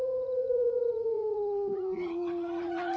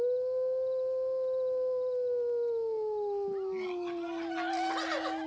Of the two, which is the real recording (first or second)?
second